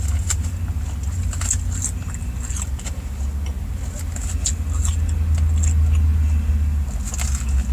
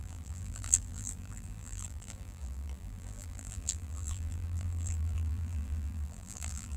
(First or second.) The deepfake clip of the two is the second